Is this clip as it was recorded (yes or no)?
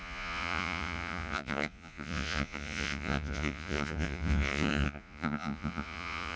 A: no